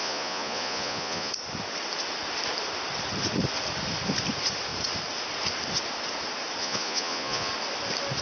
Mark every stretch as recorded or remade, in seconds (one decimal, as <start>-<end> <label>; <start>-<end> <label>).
0.0-1.3 remade; 1.3-6.6 recorded; 6.6-7.5 remade; 7.5-8.2 recorded